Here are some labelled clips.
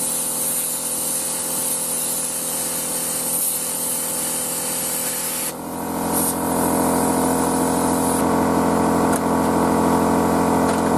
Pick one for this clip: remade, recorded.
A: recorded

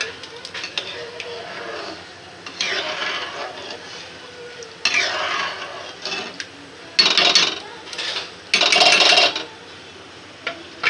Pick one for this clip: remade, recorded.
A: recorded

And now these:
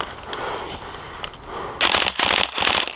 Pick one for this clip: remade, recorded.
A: recorded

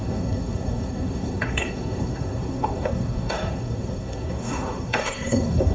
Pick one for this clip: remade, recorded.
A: remade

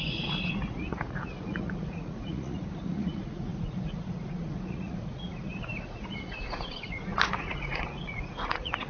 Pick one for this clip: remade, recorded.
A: remade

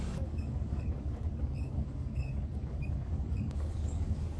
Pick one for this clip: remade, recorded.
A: remade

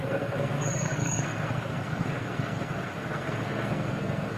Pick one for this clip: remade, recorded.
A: remade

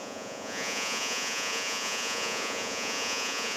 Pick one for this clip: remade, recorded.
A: remade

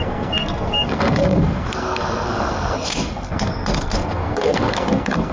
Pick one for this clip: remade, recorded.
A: remade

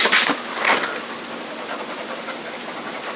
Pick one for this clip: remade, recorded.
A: remade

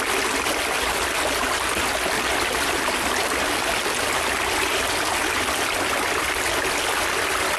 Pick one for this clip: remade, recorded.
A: recorded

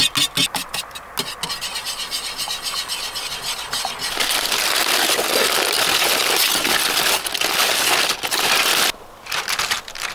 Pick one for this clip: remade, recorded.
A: recorded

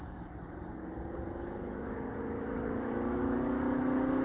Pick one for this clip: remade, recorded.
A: remade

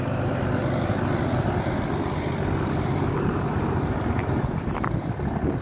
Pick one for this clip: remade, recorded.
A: recorded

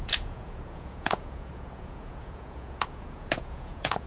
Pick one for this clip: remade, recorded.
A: remade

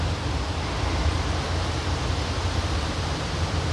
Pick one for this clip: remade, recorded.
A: recorded